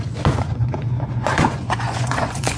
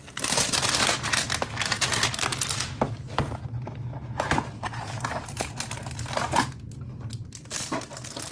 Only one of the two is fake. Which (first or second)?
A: first